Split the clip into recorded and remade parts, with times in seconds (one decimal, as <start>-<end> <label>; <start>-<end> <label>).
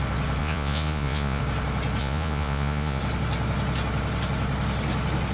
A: 0.0-0.4 recorded; 0.4-1.4 remade; 1.4-2.0 recorded; 2.0-3.0 remade; 3.0-5.3 recorded